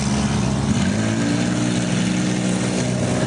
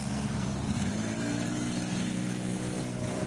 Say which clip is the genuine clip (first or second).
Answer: first